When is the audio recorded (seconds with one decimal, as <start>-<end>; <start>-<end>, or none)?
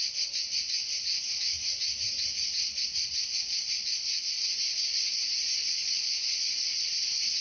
5.8-7.4